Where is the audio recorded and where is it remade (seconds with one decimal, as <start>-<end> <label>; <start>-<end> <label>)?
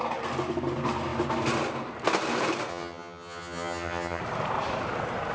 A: 0.0-2.7 recorded; 2.7-4.2 remade; 4.2-5.3 recorded